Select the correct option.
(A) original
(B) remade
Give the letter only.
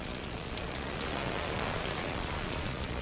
B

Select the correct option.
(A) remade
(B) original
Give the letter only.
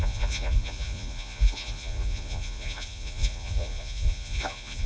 A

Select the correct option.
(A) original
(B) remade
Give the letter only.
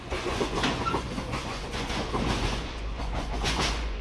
B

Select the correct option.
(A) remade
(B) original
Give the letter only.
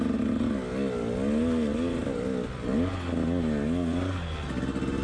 B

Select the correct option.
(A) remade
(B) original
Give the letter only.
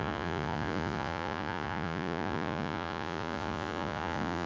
A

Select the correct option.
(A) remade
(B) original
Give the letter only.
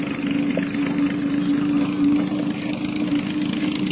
B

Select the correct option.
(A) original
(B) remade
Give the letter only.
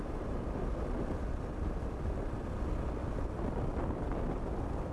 A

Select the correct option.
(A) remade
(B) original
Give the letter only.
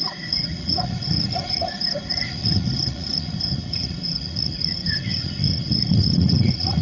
A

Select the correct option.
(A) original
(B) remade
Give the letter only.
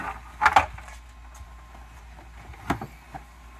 A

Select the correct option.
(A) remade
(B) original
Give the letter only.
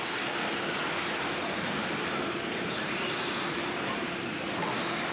B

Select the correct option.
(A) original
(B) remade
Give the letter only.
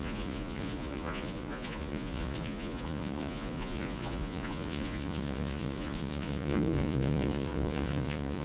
B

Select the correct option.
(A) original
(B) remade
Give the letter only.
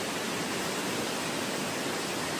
A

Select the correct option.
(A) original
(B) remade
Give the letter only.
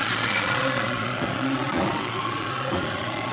B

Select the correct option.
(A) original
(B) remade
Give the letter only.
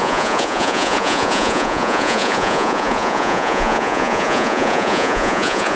B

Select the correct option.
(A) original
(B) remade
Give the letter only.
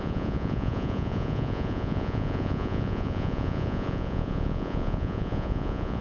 B